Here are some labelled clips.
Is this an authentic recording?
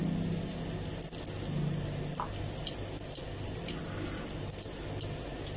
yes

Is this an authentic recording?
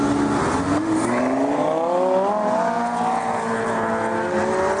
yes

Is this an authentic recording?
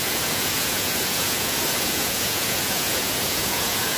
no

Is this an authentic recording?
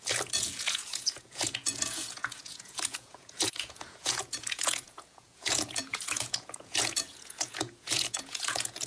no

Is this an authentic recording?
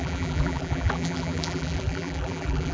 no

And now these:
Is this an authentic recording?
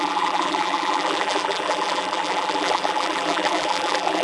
no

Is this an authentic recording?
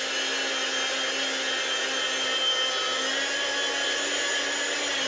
yes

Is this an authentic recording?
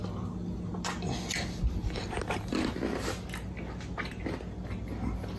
yes